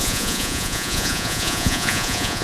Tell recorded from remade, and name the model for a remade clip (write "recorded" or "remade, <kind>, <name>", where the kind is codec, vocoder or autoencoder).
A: remade, vocoder, Vocos